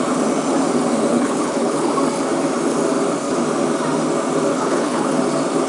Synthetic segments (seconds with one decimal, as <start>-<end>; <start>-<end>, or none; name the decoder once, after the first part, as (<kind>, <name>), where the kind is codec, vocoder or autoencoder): 1.1-1.9 (codec, HILCodec); 4.5-5.1